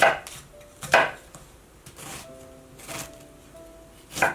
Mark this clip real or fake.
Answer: real